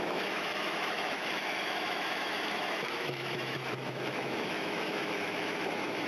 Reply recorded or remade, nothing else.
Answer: remade